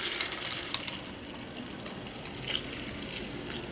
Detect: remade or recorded recorded